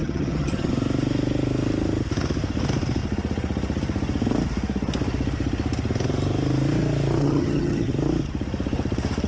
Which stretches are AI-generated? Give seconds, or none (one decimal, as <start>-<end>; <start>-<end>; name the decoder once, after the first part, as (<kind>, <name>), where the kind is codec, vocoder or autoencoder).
0.0-0.7 (vocoder, HiFi-GAN); 7.2-7.9